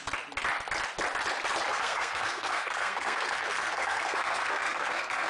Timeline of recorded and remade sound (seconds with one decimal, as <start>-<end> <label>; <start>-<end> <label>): 0.0-1.7 recorded; 1.7-5.3 remade